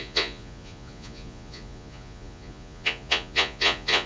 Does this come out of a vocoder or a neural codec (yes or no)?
yes